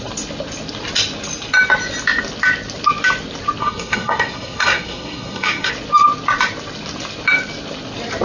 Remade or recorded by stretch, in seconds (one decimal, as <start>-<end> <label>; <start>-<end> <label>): 0.0-3.6 recorded; 3.6-5.7 remade; 5.7-8.2 recorded